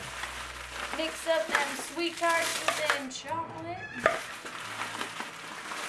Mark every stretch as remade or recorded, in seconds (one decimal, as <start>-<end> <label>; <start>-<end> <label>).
0.0-5.9 recorded